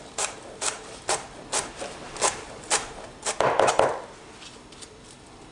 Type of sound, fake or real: real